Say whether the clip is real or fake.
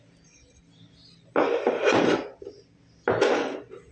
real